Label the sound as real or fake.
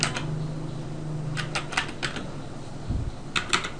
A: real